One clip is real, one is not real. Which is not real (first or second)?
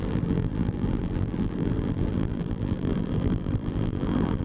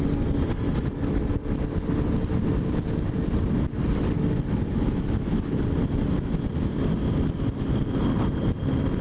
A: first